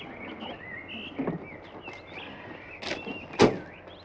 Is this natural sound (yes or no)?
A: yes